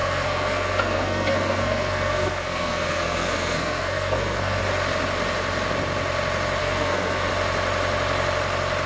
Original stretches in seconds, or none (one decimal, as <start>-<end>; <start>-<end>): 4.6-6.6; 7.3-8.9